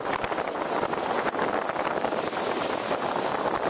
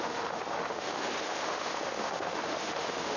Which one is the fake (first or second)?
second